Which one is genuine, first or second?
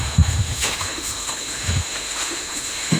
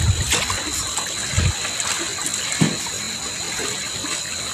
second